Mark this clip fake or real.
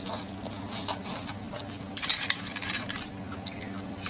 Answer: real